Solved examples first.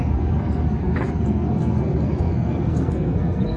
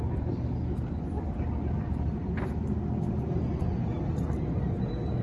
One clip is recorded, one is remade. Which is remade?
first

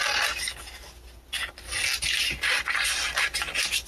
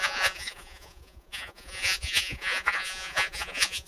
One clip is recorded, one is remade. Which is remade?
second